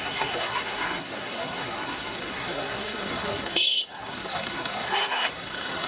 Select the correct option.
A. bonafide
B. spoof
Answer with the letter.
B